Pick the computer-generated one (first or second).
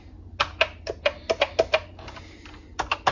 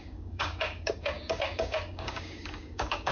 second